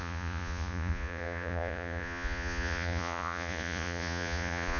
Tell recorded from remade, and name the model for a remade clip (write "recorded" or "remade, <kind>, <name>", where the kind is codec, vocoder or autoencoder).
remade, vocoder, Vocos